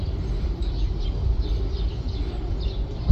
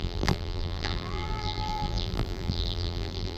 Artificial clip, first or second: second